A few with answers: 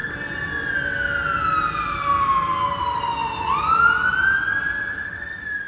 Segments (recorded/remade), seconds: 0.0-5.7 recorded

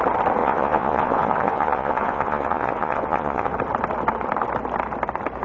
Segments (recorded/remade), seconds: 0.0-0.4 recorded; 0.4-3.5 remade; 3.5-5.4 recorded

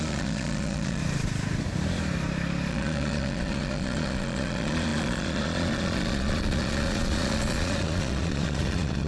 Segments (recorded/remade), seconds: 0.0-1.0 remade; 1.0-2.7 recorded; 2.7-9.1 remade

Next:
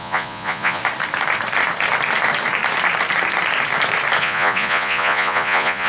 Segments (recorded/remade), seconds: 0.0-0.8 remade; 0.8-4.2 recorded; 4.2-5.9 remade

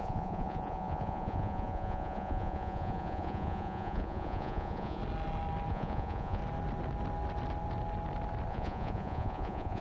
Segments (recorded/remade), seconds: 0.0-5.0 remade; 5.0-5.7 recorded; 5.7-6.4 remade; 6.4-8.5 recorded; 8.5-9.8 remade

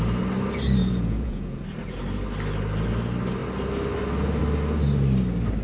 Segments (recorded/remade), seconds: 0.0-0.8 recorded; 0.8-1.6 remade; 1.6-5.6 recorded

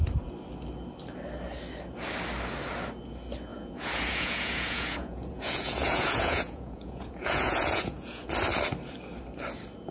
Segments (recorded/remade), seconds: 0.0-3.5 recorded; 3.5-8.3 remade; 8.3-9.9 recorded